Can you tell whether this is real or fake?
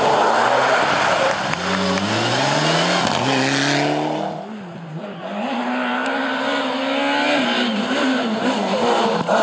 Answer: real